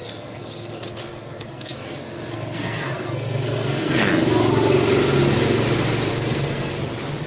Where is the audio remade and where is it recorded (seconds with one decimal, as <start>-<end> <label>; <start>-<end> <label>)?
0.0-4.1 remade; 4.1-6.1 recorded; 6.1-6.7 remade; 6.7-7.3 recorded